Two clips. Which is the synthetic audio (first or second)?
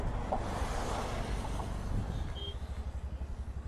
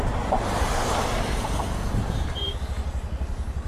second